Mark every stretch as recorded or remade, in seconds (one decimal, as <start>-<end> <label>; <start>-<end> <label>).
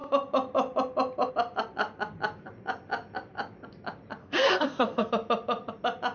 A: 0.0-4.2 recorded; 4.2-5.1 remade; 5.1-6.1 recorded